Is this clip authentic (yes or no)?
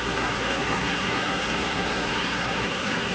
no